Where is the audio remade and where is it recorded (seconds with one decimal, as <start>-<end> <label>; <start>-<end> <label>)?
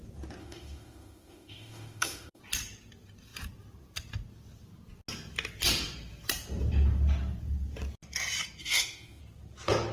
0.0-0.4 recorded; 0.4-2.4 remade; 2.4-8.6 recorded; 8.6-9.2 remade; 9.2-9.9 recorded